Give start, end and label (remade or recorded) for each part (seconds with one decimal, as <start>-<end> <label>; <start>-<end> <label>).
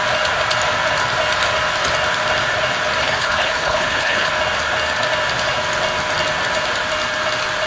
0.0-3.0 recorded; 3.0-4.3 remade; 4.3-7.7 recorded